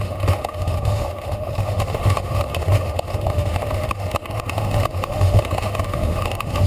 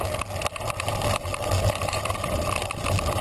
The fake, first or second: first